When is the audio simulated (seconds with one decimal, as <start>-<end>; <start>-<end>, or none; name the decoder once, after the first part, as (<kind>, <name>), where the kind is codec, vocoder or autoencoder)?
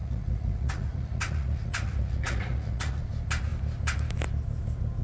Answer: 0.0-3.0 (vocoder, Vocos)